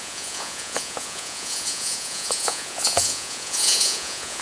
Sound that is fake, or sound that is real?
fake